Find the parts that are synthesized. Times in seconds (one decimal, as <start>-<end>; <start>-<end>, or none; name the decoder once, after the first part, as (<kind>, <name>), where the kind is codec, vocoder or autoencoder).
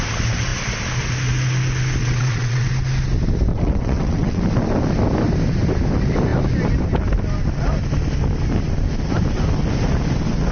2.0-2.7 (vocoder, WaveNeXt); 3.5-4.4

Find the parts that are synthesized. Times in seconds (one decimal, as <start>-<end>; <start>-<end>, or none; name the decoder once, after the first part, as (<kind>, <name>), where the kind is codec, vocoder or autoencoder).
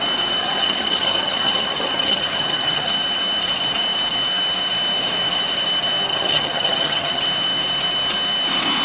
0.4-2.9 (vocoder, HiFi-GAN); 6.1-7.2